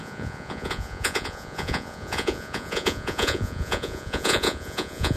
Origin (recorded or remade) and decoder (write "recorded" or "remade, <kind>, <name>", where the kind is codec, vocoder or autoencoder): remade, vocoder, Vocos